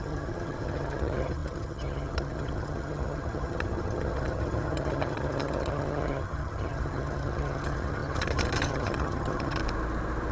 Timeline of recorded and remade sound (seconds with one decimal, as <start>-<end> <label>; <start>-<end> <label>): 0.0-9.6 remade; 9.6-10.3 recorded